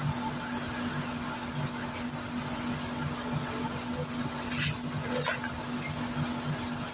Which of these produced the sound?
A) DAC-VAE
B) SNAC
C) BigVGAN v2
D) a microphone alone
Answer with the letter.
D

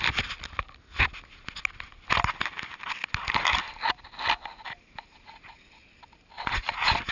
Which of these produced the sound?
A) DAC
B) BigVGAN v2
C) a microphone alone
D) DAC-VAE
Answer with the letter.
C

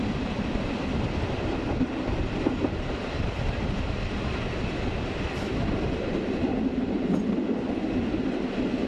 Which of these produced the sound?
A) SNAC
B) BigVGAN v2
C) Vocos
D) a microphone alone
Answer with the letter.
D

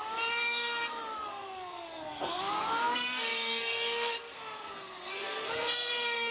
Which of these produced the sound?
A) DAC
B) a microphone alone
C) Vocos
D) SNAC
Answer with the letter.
D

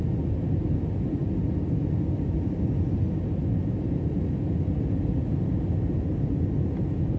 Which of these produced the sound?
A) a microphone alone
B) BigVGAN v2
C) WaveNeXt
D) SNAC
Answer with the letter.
A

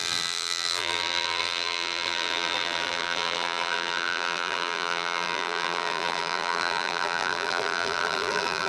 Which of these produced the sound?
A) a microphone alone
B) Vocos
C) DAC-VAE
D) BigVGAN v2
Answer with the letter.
D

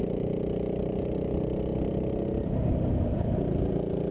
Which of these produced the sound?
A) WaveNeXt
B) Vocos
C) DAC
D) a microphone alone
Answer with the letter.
D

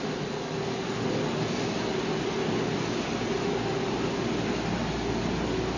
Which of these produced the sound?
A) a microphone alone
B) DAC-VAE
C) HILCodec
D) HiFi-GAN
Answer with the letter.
A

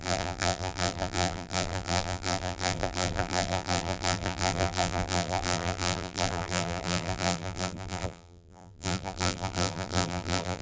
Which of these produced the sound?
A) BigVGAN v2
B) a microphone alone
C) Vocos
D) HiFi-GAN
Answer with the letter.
A